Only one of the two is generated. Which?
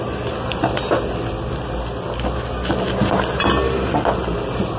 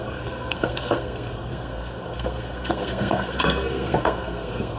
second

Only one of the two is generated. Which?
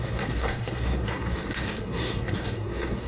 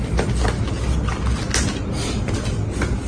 first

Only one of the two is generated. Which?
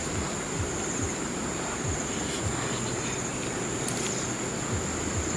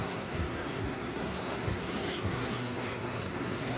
second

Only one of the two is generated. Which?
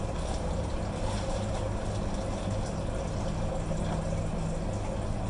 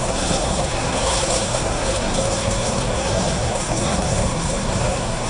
second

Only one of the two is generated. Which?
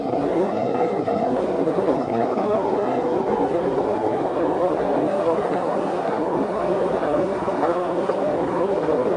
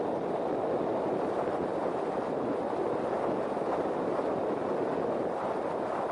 first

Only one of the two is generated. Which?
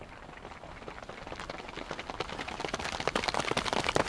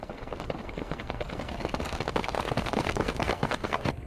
second